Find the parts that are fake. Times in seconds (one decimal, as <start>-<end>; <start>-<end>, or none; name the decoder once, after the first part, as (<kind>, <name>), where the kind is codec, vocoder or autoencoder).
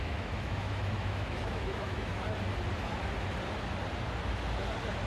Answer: 0.0-2.1 (autoencoder, DAC-VAE)